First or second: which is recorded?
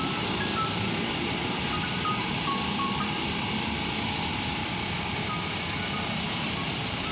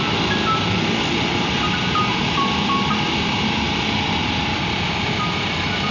second